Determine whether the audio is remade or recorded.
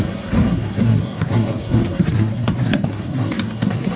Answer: remade